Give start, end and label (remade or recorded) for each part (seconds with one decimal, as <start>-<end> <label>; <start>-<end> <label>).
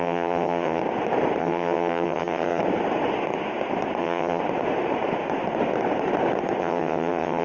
0.0-0.8 remade; 0.8-1.4 recorded; 1.4-2.6 remade; 2.6-4.0 recorded; 4.0-4.4 remade; 4.4-6.6 recorded; 6.6-7.4 remade